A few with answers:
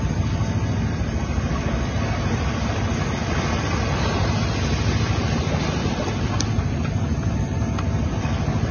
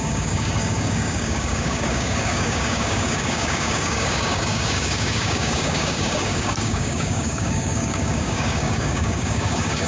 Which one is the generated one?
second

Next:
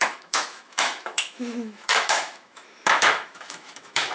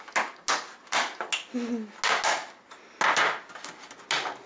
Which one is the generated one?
first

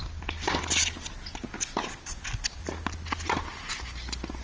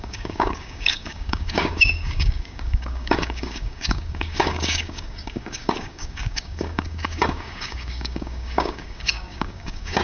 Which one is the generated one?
second